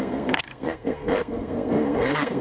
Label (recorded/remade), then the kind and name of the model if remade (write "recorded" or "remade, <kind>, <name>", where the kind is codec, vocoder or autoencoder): remade, codec, SNAC